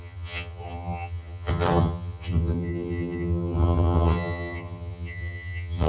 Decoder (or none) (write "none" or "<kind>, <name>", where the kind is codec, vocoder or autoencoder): vocoder, HiFi-GAN